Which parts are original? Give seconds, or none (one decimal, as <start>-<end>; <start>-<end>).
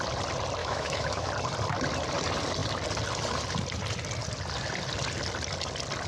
0.0-0.6; 1.3-6.1